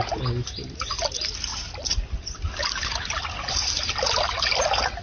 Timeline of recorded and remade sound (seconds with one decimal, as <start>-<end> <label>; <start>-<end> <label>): 0.0-5.0 recorded